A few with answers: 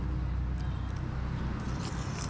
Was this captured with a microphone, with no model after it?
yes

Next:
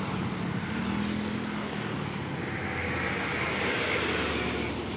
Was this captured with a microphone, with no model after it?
yes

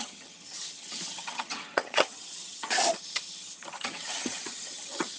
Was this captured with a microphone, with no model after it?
no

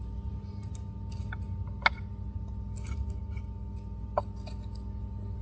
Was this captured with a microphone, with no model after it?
yes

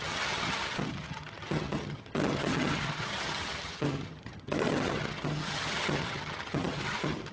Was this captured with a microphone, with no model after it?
no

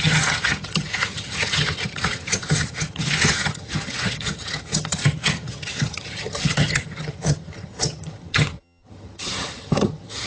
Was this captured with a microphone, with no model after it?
no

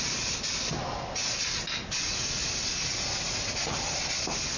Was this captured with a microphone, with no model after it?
yes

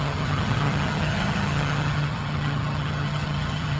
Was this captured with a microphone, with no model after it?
no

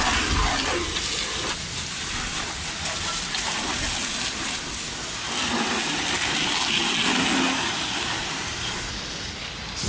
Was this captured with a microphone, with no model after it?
yes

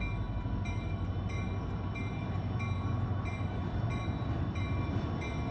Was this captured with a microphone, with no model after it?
yes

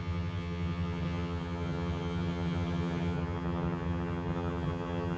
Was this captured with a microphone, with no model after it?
no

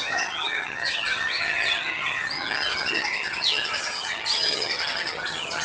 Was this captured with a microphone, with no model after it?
no